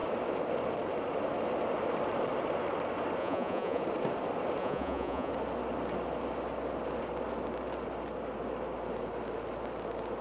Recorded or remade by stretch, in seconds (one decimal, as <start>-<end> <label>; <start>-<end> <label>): 0.0-3.2 recorded; 3.2-3.8 remade; 3.8-4.6 recorded; 4.6-5.3 remade; 5.3-10.2 recorded